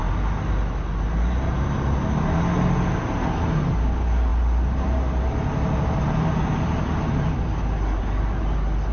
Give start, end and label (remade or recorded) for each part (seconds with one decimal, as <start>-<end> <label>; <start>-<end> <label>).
0.0-8.9 recorded